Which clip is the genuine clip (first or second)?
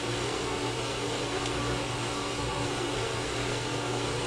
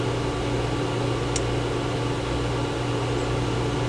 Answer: second